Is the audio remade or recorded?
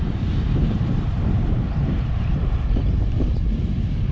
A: remade